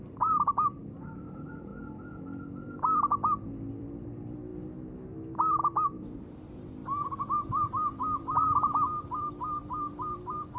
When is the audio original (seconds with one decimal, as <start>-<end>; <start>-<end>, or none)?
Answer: 1.7-3.7; 4.5-5.6